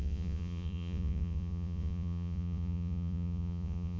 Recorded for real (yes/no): no